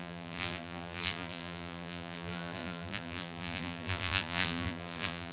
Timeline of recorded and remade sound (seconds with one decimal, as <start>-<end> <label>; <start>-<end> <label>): 0.0-5.3 remade